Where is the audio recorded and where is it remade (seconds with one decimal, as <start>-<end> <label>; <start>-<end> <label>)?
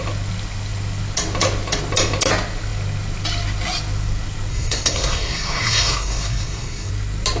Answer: 0.0-4.5 recorded; 4.5-6.9 remade; 6.9-7.4 recorded